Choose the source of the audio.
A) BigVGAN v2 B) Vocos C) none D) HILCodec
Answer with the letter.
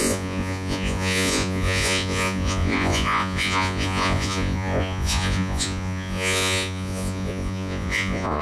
B